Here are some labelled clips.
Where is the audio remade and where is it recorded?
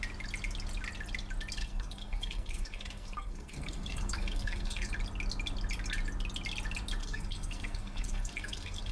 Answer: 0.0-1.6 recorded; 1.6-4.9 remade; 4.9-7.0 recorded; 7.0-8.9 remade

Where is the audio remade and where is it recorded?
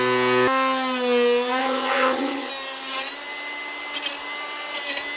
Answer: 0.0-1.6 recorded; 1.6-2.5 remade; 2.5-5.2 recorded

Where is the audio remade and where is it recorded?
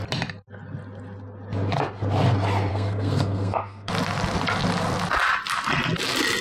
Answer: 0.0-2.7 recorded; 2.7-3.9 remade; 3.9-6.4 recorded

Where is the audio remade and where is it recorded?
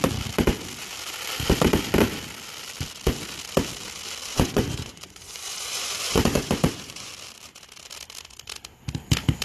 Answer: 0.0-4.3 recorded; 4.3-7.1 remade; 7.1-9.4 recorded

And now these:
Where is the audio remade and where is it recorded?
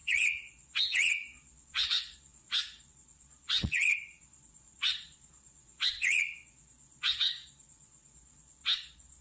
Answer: 0.0-9.2 remade